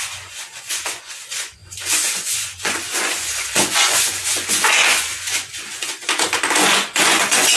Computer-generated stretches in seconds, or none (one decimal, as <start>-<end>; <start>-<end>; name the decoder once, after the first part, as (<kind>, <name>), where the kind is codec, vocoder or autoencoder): 0.0-7.6 (vocoder, Vocos)